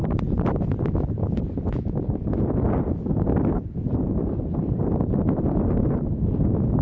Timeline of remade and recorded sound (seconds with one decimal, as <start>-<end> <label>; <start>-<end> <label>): 0.0-6.8 recorded